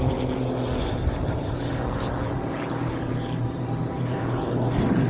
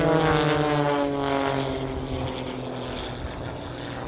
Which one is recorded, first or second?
second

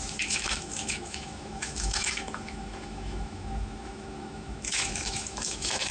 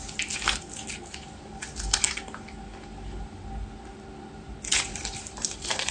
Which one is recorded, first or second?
second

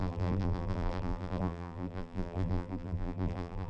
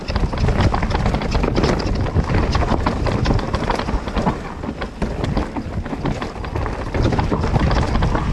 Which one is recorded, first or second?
second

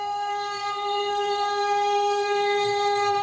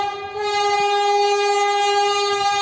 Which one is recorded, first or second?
second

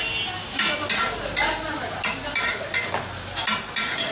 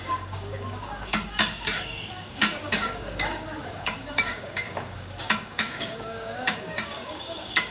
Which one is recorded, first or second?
first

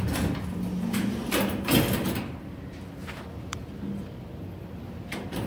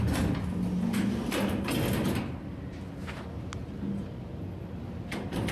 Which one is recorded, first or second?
second